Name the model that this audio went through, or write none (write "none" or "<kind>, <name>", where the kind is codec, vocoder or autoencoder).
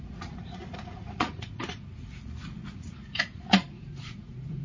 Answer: vocoder, Vocos